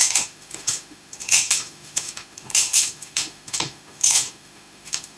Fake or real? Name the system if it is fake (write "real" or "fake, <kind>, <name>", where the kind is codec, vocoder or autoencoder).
fake, autoencoder, DAC-VAE